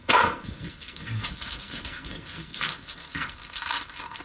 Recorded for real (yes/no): no